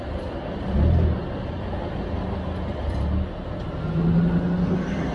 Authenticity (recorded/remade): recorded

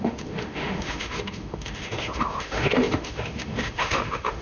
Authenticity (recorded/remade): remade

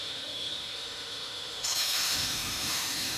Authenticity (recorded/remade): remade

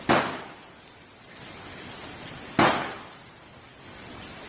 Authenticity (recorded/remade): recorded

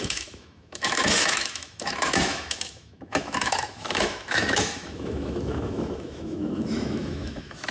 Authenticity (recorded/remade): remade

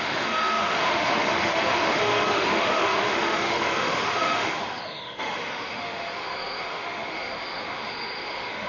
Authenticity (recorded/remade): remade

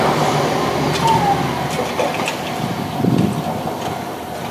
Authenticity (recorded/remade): recorded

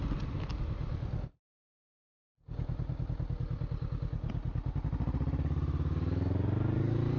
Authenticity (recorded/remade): recorded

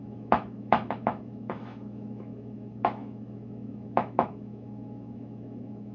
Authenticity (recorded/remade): remade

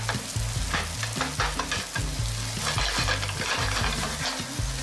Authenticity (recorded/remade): recorded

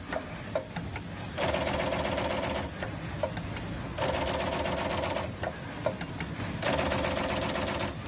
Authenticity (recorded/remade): recorded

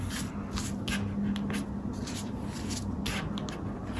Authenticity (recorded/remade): recorded